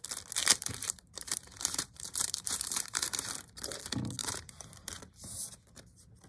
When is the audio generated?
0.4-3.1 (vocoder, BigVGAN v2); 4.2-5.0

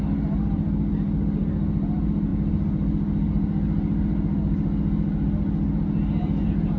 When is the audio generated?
none

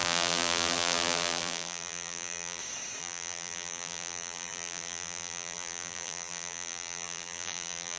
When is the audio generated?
0.0-2.6 (vocoder, BigVGAN v2); 3.0-8.0